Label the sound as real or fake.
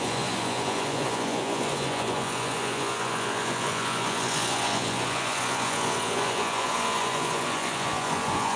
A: fake